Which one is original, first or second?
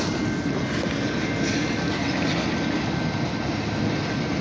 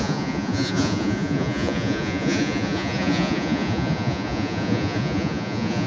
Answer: first